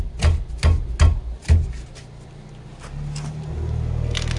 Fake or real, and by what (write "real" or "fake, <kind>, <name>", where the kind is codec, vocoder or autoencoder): real